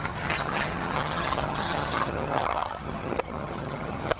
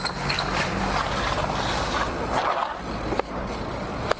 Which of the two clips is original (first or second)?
second